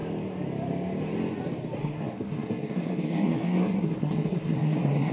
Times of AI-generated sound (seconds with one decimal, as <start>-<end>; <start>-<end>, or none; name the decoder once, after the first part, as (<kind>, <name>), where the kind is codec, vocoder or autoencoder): 1.8-5.1 (codec, SNAC)